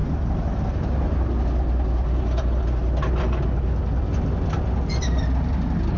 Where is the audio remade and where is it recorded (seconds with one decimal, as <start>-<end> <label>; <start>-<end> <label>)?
0.0-6.0 recorded